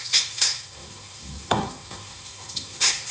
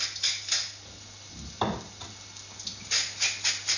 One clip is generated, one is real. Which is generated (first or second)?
first